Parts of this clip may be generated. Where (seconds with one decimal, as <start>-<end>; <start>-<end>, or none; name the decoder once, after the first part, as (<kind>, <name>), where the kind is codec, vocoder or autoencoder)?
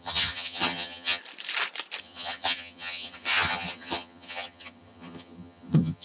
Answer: 0.0-1.2 (vocoder, HiFi-GAN); 2.0-6.0